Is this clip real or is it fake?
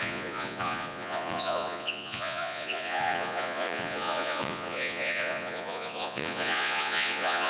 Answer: fake